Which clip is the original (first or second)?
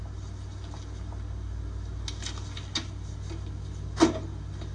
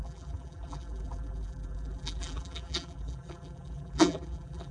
first